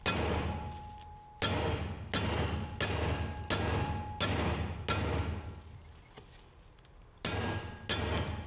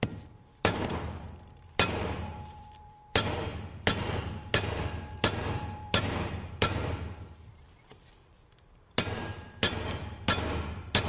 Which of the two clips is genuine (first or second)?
first